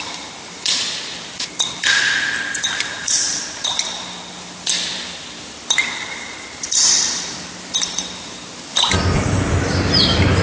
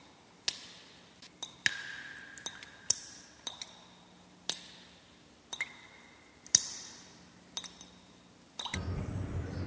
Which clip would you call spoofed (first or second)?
first